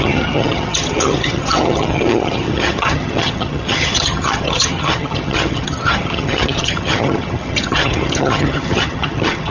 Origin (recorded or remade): remade